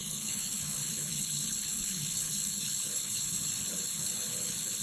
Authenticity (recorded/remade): remade